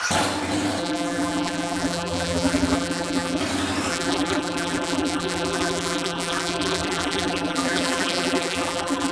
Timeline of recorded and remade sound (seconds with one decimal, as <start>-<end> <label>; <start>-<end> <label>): 0.0-0.8 recorded; 0.8-3.4 remade; 3.4-3.9 recorded; 3.9-9.1 remade